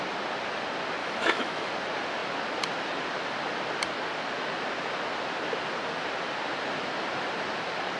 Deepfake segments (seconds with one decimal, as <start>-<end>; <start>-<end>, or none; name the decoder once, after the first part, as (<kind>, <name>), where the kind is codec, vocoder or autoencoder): 1.0-1.7 (autoencoder, DAC-VAE)